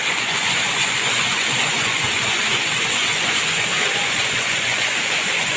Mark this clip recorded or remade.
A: remade